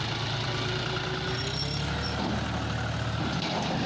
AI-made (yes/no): no